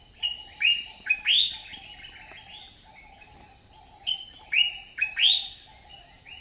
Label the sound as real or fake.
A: real